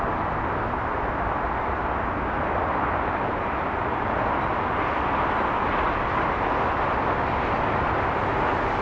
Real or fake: real